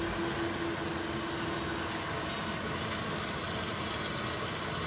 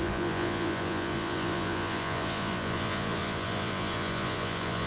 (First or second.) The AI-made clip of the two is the second